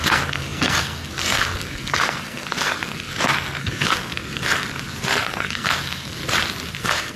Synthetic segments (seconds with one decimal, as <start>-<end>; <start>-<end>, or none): 0.0-6.2; 6.8-7.2